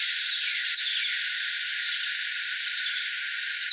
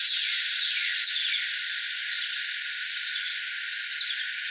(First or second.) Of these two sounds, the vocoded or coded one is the first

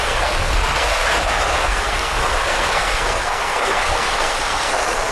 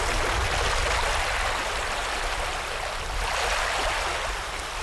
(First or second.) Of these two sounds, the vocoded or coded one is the first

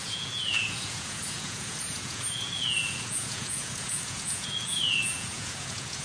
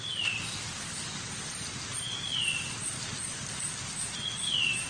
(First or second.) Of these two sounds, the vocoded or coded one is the first